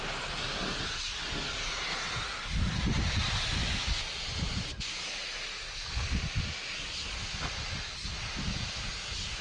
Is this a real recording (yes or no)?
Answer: yes